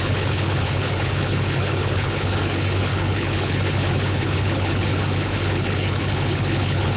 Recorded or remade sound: remade